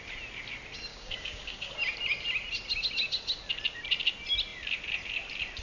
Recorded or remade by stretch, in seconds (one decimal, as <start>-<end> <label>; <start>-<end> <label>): 0.0-0.9 recorded; 0.9-1.7 remade; 1.7-5.6 recorded